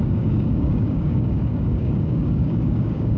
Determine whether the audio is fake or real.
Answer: fake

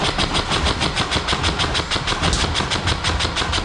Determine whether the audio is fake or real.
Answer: real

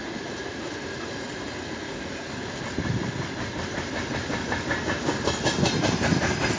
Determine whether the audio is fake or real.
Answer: real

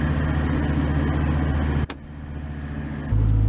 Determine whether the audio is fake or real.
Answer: real